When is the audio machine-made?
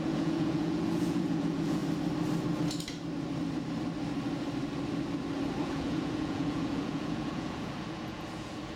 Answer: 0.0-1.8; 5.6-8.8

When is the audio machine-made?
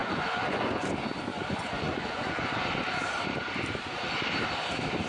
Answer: 0.0-0.9; 1.3-2.7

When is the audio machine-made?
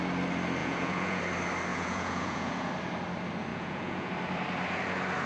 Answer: 0.6-1.2; 1.7-2.7; 3.5-4.1